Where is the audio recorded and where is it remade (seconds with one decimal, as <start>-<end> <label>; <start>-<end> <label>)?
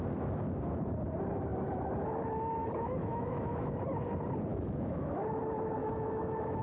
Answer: 0.0-2.6 recorded; 2.6-3.7 remade; 3.7-4.5 recorded; 4.5-5.1 remade; 5.1-5.8 recorded; 5.8-6.6 remade